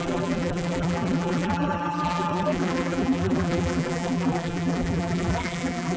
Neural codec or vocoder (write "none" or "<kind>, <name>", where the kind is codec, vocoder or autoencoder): vocoder, BigVGAN v2